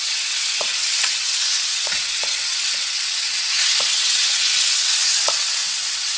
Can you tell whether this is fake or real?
fake